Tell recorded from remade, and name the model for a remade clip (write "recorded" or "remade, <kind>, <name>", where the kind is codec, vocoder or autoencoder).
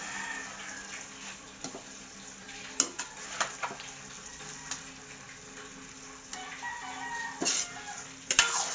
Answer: recorded